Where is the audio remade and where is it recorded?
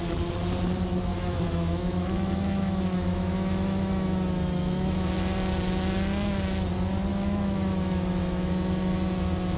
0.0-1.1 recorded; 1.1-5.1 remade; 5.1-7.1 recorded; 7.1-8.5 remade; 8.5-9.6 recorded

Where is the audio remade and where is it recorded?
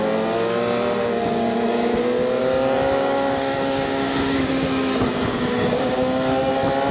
0.0-1.1 recorded; 1.1-2.0 remade; 2.0-2.4 recorded; 2.4-6.5 remade; 6.5-6.9 recorded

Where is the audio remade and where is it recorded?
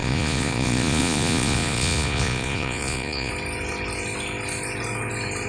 0.0-3.3 remade; 3.3-5.5 recorded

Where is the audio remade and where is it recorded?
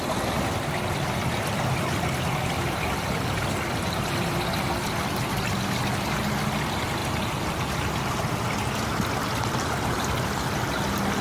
0.0-11.2 recorded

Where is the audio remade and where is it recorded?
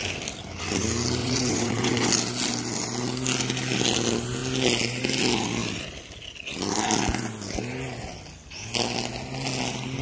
0.0-1.2 recorded; 1.2-2.1 remade; 2.1-10.0 recorded